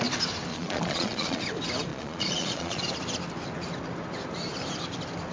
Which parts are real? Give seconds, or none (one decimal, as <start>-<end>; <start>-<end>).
0.0-0.5; 1.4-1.9; 2.8-5.3